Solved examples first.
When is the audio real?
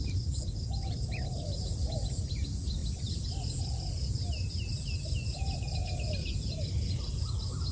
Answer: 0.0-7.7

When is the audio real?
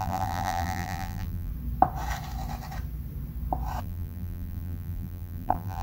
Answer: 1.5-3.8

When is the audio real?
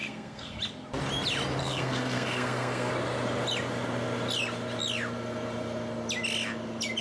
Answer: 0.6-1.6; 2.9-7.0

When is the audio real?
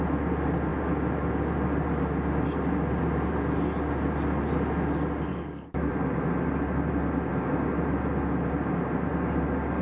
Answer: 0.0-5.3; 5.9-9.8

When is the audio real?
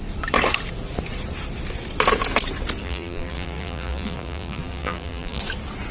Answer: 0.0-2.8; 5.4-5.9